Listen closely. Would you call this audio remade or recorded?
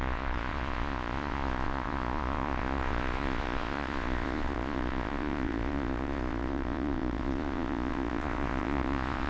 remade